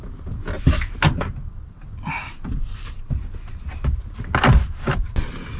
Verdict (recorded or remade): recorded